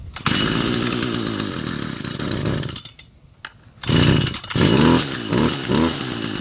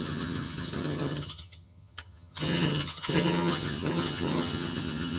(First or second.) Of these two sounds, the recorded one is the first